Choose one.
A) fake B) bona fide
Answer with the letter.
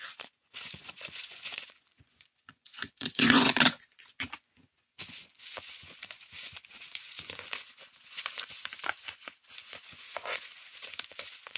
A